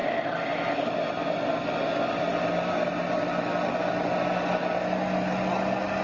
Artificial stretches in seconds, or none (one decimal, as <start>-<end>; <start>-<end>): none